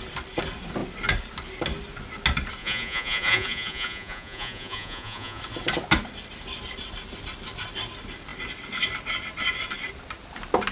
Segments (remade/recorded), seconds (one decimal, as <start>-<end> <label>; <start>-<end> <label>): 0.0-2.6 recorded; 2.6-5.4 remade; 5.4-10.7 recorded